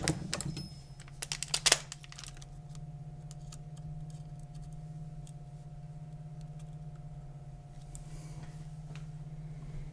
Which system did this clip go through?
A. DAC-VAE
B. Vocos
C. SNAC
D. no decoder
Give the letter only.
D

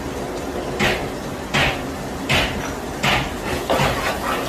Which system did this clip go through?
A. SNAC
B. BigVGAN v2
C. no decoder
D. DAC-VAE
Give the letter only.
C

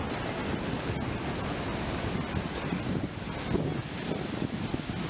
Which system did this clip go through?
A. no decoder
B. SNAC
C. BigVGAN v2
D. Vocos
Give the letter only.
A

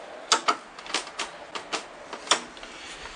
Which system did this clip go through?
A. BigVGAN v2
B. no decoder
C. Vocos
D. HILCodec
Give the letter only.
B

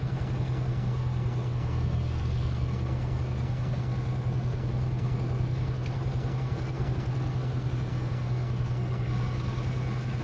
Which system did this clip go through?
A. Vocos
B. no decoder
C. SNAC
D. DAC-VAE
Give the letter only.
C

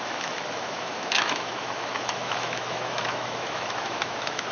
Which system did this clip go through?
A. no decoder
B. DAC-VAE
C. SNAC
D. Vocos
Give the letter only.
B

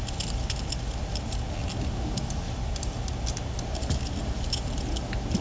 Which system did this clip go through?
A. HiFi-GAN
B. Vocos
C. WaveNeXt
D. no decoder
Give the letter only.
D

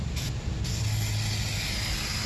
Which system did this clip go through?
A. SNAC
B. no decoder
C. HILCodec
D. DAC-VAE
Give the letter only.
B